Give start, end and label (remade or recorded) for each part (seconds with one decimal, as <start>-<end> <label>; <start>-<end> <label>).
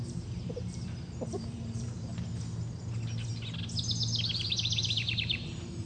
0.0-2.1 remade; 2.1-4.8 recorded; 4.8-5.9 remade